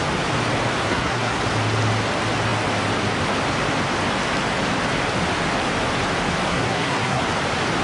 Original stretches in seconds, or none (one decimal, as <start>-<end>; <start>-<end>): 0.0-0.8; 1.4-6.5; 7.2-7.8